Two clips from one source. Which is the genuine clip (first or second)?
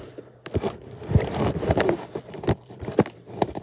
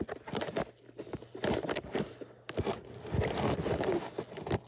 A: second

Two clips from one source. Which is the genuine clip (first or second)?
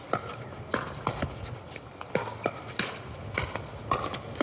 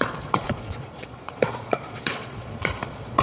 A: first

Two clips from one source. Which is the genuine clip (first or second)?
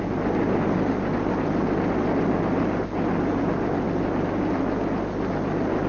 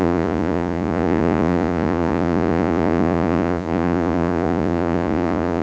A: first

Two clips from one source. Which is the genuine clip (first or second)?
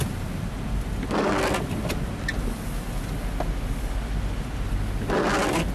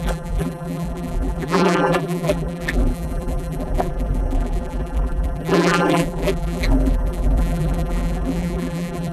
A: first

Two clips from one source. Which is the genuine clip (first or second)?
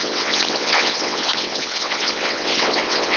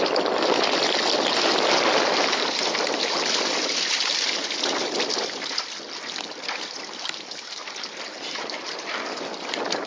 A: second